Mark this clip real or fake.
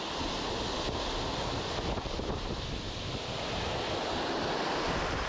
real